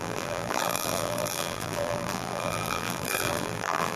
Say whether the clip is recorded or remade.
remade